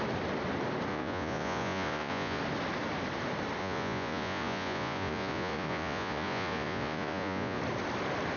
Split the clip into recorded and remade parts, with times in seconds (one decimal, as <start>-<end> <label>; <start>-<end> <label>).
0.0-0.9 recorded; 0.9-2.4 remade; 2.4-3.6 recorded; 3.6-7.6 remade; 7.6-8.4 recorded